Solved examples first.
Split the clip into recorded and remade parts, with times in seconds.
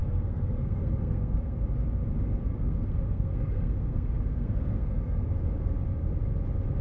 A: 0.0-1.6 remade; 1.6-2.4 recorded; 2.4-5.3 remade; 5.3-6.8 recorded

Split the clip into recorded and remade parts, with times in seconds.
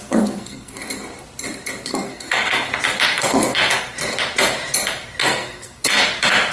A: 0.0-0.8 remade; 0.8-1.9 recorded; 1.9-2.7 remade; 2.7-3.1 recorded; 3.1-3.8 remade; 3.8-5.2 recorded; 5.2-6.0 remade; 6.0-6.5 recorded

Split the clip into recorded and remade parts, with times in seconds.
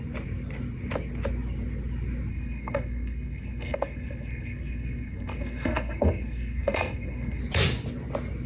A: 0.0-2.3 recorded; 2.3-7.4 remade; 7.4-8.5 recorded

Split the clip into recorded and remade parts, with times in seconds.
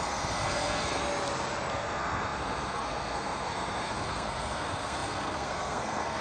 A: 0.0-1.0 remade; 1.0-1.7 recorded; 1.7-6.2 remade